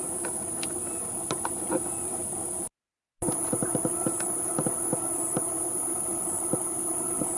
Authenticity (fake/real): real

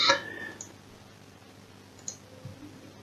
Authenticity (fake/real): real